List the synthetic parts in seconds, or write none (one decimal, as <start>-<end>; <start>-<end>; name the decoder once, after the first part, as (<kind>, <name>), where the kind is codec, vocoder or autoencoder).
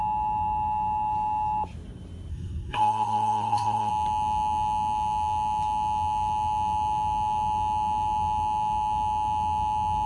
2.3-3.9 (codec, SNAC)